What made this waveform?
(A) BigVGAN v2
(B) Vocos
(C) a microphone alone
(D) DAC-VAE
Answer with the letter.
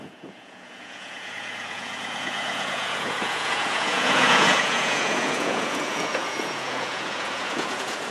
B